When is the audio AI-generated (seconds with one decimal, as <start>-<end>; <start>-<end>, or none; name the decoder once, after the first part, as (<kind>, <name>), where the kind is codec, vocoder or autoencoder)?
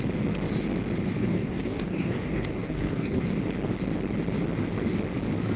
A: 1.2-3.2 (codec, DAC)